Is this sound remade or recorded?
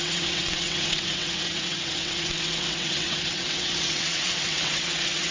remade